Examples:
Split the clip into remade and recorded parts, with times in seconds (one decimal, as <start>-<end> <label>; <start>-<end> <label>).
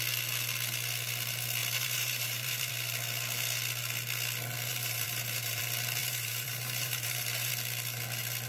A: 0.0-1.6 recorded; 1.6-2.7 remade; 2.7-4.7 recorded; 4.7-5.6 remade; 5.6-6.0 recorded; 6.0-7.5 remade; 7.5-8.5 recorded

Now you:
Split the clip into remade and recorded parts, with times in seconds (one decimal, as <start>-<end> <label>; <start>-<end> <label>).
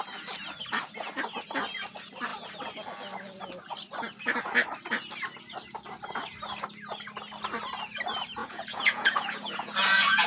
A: 0.0-8.4 recorded; 8.4-10.3 remade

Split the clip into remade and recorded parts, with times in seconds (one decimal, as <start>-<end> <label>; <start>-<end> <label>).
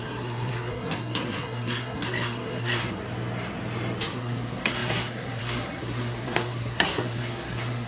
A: 0.0-3.0 remade; 3.0-4.0 recorded; 4.0-7.9 remade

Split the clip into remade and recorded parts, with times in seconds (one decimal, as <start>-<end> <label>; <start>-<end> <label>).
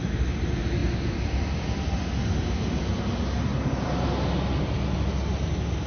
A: 0.0-5.9 recorded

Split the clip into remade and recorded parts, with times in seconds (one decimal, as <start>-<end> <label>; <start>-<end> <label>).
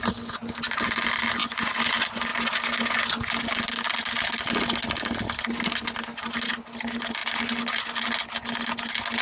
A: 0.0-9.2 recorded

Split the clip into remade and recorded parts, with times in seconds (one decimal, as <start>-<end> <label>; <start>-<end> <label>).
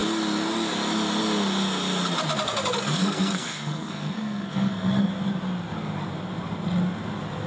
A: 0.0-3.0 recorded; 3.0-5.1 remade; 5.1-7.5 recorded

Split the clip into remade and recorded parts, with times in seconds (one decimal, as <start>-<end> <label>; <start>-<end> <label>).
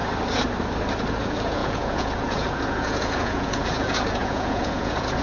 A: 0.0-1.2 recorded; 1.2-5.2 remade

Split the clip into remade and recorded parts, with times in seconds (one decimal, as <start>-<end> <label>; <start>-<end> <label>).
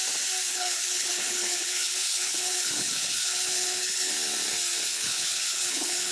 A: 0.0-0.5 recorded; 0.5-4.1 remade; 4.1-4.9 recorded; 4.9-6.1 remade